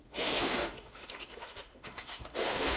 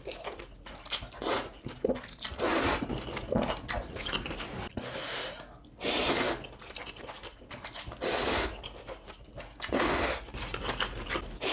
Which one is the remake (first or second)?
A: first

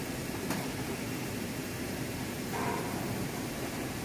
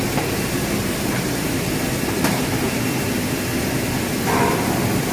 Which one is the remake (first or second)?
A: first